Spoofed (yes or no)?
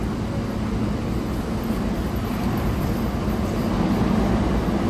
no